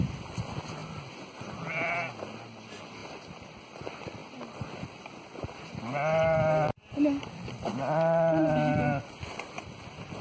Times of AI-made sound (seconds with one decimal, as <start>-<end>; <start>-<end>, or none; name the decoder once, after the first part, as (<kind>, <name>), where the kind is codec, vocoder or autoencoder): none